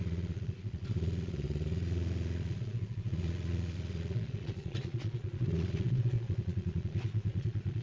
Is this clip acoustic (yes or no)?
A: no